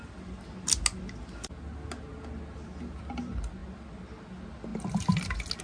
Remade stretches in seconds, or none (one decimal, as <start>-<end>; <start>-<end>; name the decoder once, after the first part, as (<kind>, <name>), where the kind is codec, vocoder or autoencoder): none